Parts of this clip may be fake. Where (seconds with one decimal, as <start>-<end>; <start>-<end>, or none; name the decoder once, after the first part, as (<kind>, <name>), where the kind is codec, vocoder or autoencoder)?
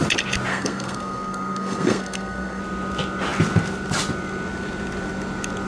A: 0.5-2.6 (codec, SNAC)